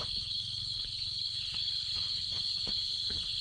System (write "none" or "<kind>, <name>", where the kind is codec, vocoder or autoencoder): codec, HILCodec